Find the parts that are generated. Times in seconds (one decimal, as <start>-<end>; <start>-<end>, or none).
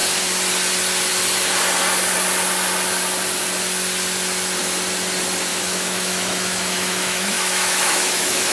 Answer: 5.5-8.5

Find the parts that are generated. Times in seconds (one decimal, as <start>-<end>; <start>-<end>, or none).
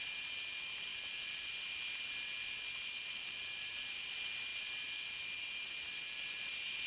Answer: none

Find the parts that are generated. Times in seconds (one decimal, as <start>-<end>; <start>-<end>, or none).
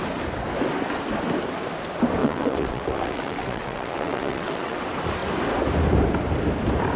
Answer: 2.2-4.8